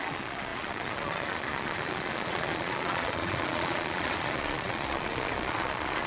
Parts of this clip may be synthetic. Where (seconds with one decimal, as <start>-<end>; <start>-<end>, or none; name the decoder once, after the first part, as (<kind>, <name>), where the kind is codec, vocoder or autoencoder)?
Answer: 0.0-6.1 (vocoder, Vocos)